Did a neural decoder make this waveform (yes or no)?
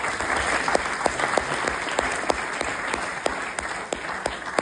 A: no